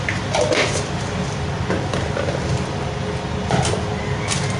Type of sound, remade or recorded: recorded